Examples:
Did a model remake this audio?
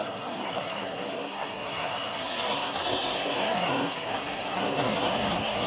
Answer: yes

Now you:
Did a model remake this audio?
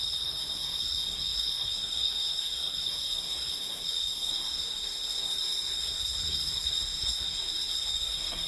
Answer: yes